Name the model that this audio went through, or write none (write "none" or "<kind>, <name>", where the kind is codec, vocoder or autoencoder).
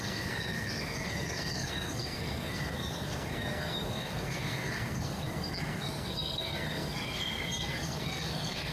codec, SNAC